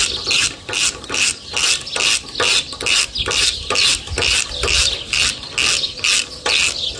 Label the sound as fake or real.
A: real